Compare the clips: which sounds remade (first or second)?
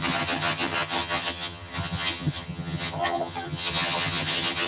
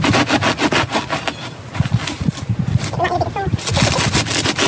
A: first